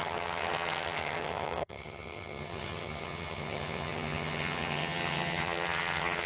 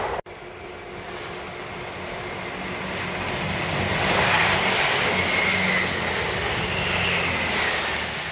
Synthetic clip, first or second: first